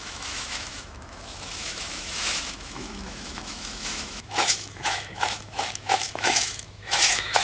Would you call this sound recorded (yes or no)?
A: no